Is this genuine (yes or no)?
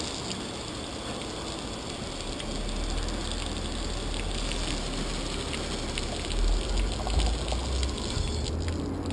yes